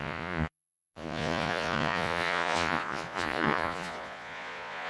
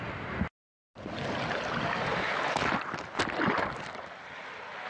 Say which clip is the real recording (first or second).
second